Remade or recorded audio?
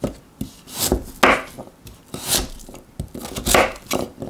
recorded